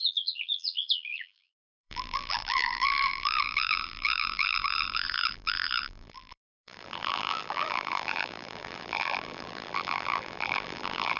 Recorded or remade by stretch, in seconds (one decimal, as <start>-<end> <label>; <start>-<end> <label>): 0.0-11.2 remade